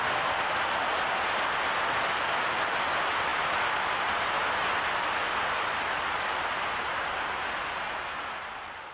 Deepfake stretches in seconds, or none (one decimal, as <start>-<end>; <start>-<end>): none